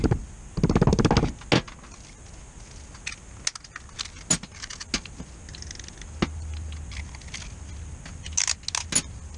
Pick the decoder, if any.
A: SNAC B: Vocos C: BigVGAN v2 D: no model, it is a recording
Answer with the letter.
D